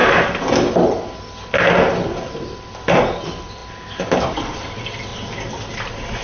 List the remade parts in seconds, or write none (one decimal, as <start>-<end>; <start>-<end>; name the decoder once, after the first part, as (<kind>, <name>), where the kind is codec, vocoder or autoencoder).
3.2-3.6 (vocoder, BigVGAN v2); 4.2-5.1; 5.7-6.2